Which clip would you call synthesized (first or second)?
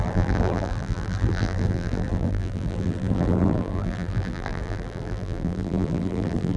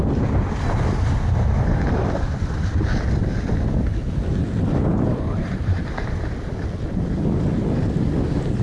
first